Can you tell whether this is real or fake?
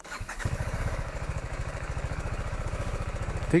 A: fake